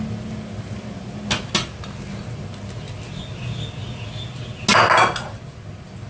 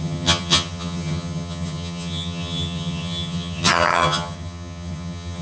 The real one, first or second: first